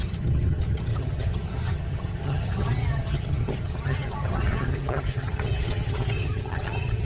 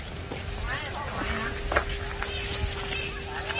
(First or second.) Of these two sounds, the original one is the second